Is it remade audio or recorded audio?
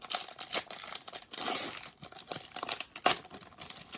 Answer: recorded